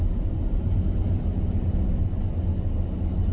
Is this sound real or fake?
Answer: real